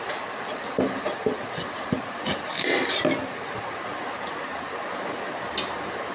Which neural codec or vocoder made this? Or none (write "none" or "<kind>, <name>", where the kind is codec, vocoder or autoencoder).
none